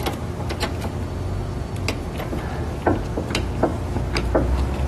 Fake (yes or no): no